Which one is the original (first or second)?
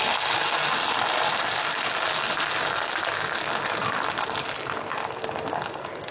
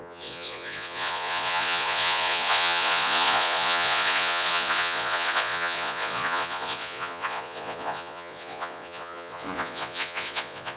first